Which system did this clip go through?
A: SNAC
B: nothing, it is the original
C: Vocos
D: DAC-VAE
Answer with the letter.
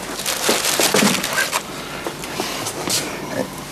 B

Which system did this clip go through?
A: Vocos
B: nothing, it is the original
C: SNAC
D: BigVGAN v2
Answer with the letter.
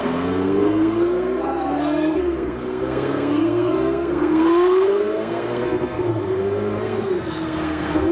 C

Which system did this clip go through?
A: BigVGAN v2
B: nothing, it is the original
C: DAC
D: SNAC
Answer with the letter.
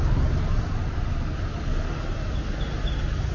B